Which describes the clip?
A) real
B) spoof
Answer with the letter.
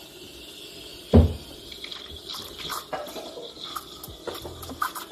B